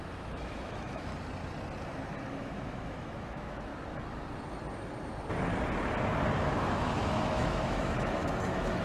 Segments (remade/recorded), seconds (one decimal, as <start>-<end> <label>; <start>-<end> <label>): 0.0-1.1 remade; 1.1-2.3 recorded; 2.3-3.7 remade; 3.7-6.4 recorded; 6.4-8.8 remade